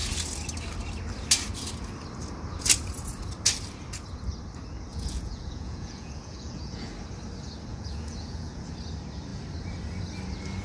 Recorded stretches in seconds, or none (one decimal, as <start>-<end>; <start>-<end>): 0.0-4.9; 6.9-7.7; 8.7-10.6